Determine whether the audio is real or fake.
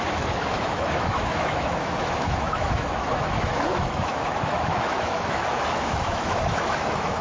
fake